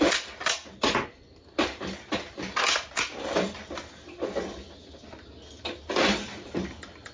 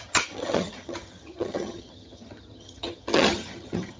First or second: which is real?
first